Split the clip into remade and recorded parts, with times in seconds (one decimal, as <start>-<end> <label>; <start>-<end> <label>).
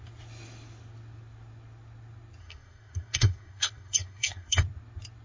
0.0-2.4 recorded; 2.4-4.6 remade; 4.6-5.2 recorded